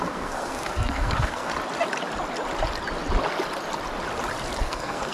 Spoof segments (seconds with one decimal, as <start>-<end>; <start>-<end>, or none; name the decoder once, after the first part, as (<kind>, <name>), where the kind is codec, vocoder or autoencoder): 0.0-1.5 (codec, SNAC); 4.6-5.1